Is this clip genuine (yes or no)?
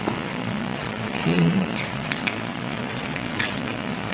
no